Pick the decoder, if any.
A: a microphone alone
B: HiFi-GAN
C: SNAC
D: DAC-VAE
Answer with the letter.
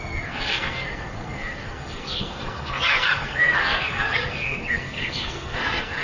C